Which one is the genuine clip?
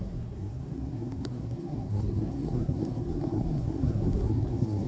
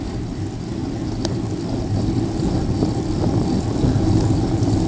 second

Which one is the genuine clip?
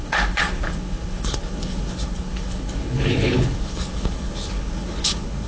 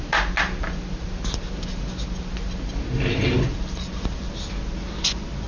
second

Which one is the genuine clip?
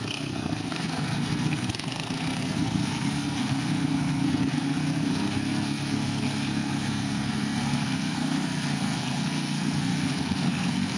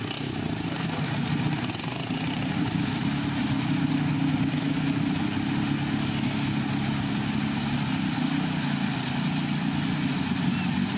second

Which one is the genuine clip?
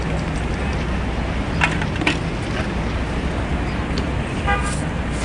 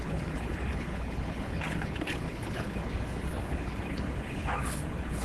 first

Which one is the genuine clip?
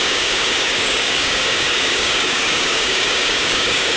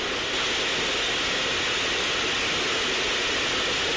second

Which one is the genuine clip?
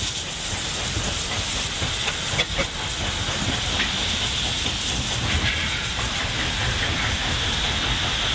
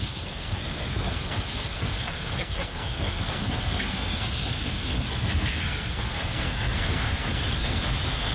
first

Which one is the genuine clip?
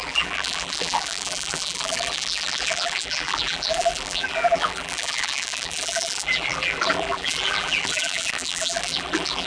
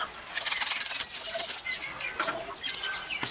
second